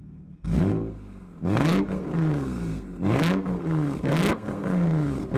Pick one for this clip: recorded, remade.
remade